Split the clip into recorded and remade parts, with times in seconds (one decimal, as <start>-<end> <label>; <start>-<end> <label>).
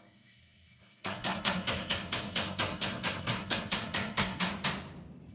0.0-4.5 remade; 4.5-5.3 recorded